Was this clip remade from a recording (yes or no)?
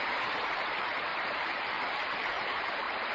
yes